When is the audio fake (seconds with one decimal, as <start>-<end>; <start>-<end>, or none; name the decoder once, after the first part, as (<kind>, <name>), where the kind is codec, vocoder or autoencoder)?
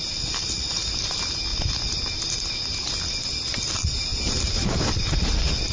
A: 4.1-5.1 (vocoder, BigVGAN v2)